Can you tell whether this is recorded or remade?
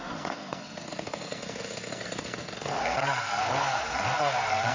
remade